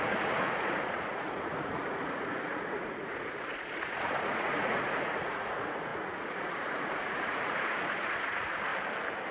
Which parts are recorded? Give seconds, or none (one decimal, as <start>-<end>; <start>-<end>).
8.7-9.3